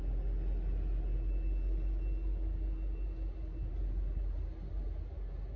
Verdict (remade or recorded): recorded